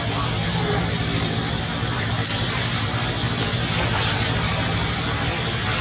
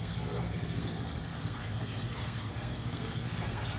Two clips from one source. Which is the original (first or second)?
first